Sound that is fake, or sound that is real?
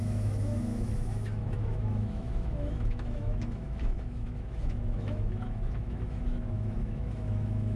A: fake